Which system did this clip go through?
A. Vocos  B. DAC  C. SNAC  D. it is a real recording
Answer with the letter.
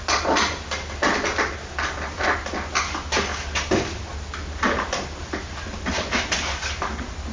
D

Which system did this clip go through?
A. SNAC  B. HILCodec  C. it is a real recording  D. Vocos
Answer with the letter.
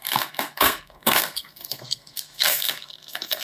A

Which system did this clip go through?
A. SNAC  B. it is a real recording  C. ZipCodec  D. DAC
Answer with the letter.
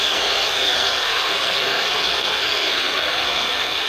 A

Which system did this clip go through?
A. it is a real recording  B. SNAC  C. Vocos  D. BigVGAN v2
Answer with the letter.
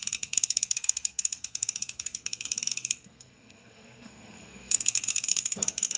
B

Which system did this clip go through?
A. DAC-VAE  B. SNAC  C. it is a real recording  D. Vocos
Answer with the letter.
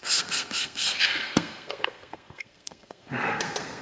B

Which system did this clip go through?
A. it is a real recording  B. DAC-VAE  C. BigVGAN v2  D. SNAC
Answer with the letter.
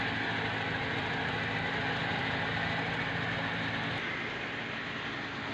A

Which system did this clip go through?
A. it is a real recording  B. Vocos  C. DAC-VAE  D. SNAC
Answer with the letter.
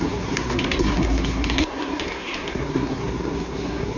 D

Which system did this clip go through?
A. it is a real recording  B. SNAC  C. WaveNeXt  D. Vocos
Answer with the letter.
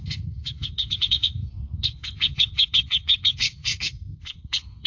B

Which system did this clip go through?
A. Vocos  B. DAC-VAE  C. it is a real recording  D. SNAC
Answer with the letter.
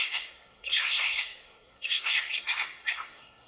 D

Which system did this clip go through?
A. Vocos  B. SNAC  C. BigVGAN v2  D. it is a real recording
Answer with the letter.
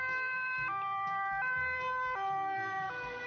D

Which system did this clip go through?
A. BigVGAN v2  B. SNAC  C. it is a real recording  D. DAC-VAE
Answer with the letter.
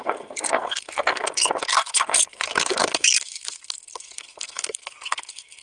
B